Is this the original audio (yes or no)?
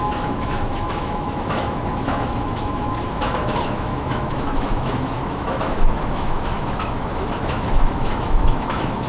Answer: no